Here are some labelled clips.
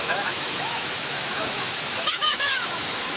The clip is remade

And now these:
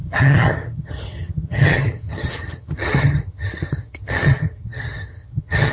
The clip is remade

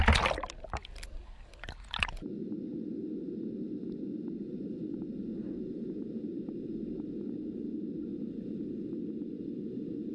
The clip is recorded